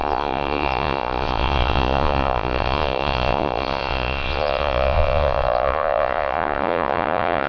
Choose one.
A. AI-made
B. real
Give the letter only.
A